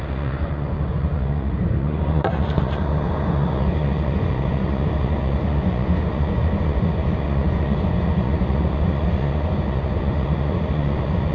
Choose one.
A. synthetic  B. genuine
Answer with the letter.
A